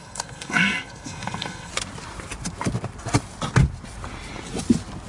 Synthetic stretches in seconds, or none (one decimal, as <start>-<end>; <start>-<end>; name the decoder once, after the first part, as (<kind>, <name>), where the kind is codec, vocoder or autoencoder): 0.0-1.7 (codec, SNAC)